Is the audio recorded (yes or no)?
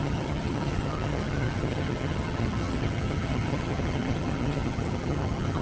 no